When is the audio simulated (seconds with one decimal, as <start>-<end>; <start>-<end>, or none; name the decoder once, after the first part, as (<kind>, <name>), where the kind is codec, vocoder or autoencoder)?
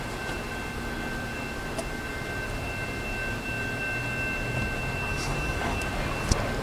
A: 5.1-5.8 (autoencoder, DAC-VAE)